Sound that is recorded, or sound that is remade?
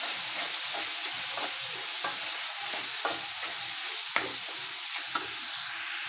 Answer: recorded